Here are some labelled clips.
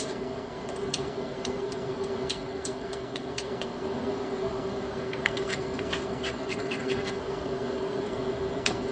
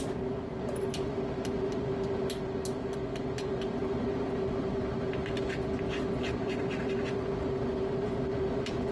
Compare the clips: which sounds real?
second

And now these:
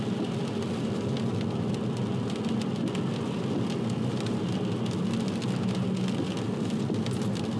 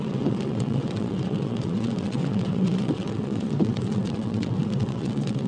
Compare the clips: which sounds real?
first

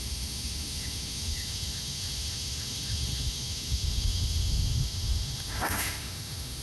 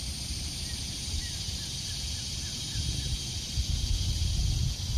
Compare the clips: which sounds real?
second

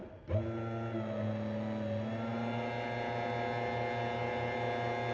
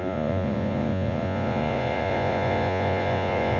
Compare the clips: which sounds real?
first